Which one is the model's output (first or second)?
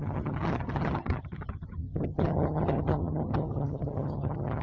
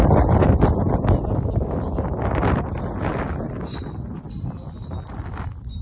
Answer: first